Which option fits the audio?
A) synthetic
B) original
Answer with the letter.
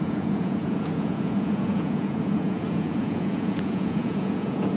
A